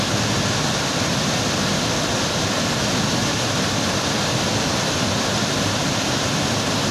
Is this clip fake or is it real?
real